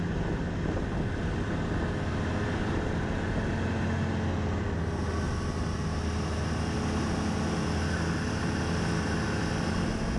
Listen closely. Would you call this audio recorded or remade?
recorded